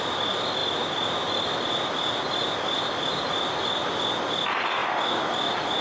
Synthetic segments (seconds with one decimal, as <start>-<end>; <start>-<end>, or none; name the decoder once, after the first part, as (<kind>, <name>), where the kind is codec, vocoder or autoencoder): none